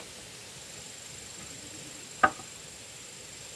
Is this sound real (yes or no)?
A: yes